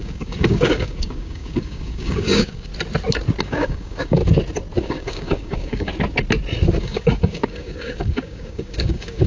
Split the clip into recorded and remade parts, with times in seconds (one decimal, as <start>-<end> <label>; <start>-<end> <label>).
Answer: 0.0-2.7 remade; 2.7-3.4 recorded; 3.4-4.2 remade; 4.2-4.8 recorded; 4.8-5.9 remade; 5.9-6.8 recorded; 6.8-9.3 remade